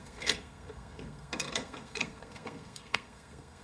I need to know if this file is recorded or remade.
remade